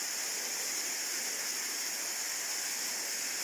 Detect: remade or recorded recorded